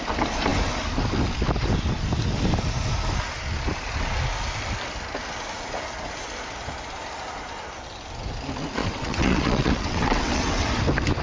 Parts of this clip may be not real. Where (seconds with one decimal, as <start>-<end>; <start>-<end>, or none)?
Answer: 8.8-10.7